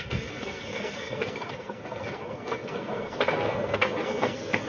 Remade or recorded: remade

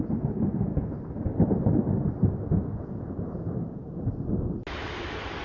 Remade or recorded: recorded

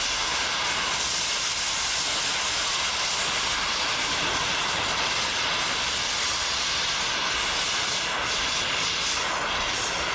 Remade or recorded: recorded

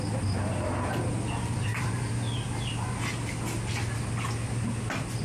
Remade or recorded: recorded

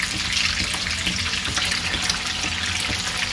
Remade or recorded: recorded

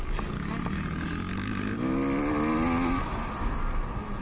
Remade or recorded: recorded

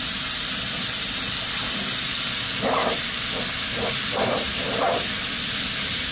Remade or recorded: recorded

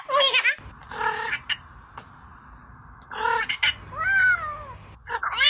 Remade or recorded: recorded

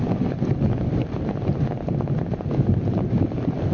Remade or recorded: recorded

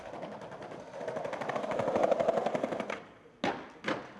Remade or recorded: recorded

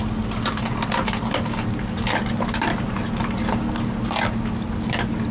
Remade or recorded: recorded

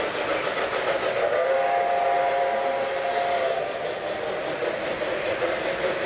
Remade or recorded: recorded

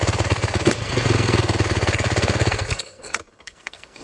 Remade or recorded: remade